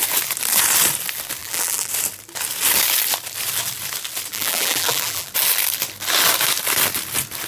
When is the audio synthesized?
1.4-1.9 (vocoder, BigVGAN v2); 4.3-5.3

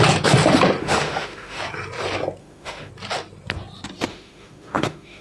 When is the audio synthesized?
0.8-1.6 (autoencoder, DAC-VAE); 2.4-2.9; 4.1-5.2

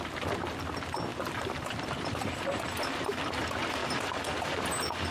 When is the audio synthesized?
1.1-3.1 (vocoder, BigVGAN v2); 3.8-4.4

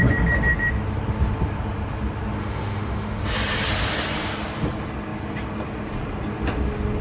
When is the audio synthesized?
2.4-3.2 (autoencoder, DAC-VAE)

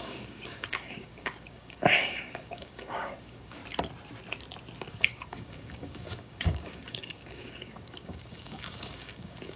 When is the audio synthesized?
0.0-3.6 (codec, DAC); 4.9-9.6

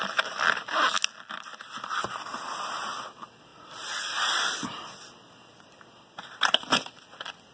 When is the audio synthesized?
none

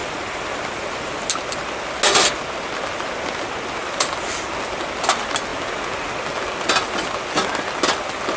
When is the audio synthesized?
0.0-1.3 (vocoder, BigVGAN v2); 3.8-4.3

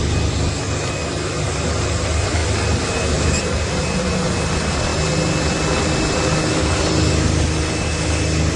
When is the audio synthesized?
none